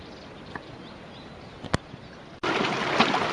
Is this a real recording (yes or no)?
yes